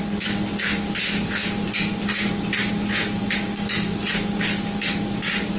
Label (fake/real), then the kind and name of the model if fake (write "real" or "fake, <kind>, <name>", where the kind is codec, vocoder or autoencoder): real